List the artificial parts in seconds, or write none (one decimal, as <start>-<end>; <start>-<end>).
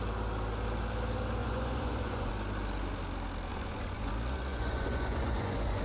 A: 1.4-2.3; 3.5-4.1; 4.5-5.8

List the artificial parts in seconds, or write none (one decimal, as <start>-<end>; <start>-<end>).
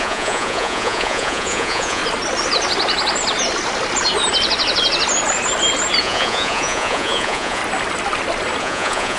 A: 0.0-2.0; 6.0-7.6; 8.6-9.2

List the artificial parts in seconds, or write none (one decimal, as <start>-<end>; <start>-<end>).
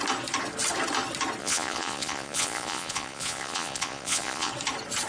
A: 1.4-4.5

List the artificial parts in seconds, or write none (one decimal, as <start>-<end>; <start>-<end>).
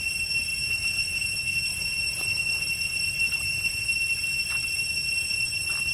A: 0.5-3.8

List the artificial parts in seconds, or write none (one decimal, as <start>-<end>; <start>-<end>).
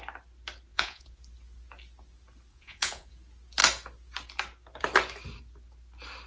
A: 0.7-1.2; 2.5-3.1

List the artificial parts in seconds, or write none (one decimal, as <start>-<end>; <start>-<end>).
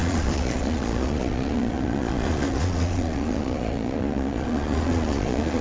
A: 0.0-5.6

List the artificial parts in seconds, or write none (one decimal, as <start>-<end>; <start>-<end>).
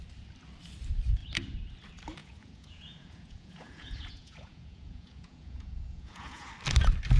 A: 2.2-6.5